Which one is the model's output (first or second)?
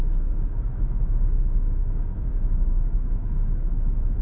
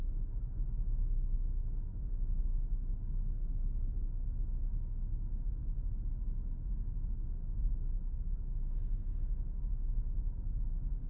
first